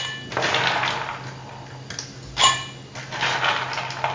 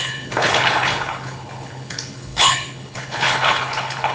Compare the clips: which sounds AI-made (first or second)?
second